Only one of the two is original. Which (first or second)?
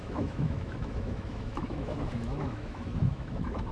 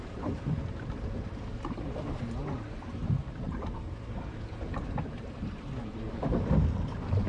second